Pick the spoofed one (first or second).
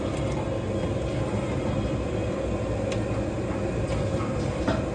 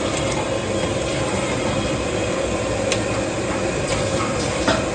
second